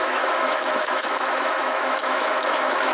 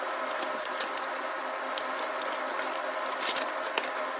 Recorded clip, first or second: second